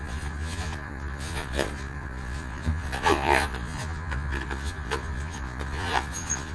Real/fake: fake